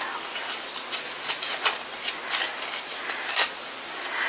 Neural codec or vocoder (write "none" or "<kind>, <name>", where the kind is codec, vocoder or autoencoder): none